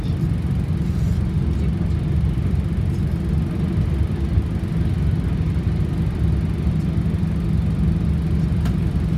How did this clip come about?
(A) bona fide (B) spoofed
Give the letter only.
A